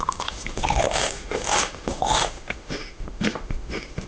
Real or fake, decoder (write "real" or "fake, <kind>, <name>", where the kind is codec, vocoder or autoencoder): fake, autoencoder, DAC-VAE